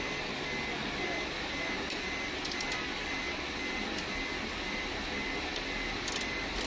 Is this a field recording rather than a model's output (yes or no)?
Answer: yes